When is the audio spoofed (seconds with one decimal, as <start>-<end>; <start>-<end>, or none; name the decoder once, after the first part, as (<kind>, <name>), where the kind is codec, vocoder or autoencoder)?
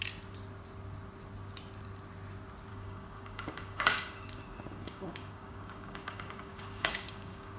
2.7-7.6 (codec, DAC)